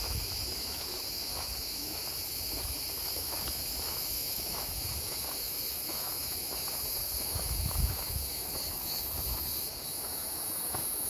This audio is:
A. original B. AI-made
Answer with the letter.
B